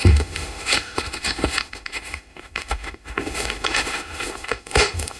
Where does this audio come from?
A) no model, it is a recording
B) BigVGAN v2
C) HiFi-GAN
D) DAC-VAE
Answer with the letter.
D